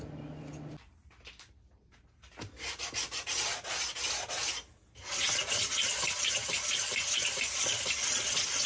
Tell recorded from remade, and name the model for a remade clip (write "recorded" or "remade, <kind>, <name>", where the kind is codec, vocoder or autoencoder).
recorded